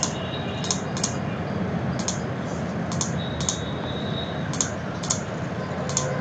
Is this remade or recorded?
recorded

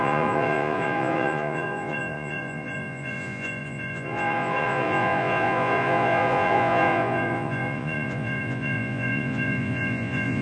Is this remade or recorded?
remade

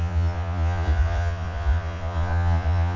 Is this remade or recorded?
remade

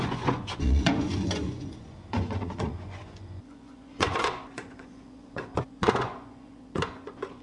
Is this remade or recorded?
remade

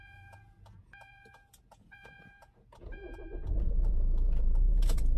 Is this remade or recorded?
remade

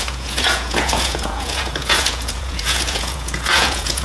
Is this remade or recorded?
remade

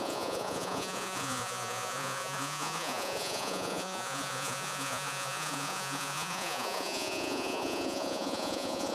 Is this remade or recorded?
remade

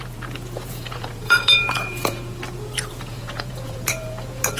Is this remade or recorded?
remade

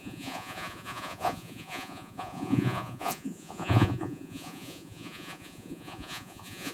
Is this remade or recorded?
remade